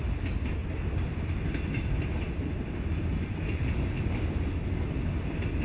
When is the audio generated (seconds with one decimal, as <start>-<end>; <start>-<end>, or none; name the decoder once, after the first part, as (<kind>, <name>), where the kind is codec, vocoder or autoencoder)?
none